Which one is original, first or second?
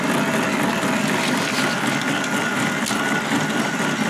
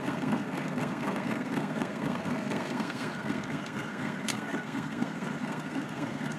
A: first